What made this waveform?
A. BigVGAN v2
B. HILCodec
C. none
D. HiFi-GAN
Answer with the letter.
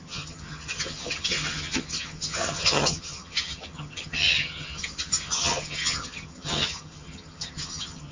D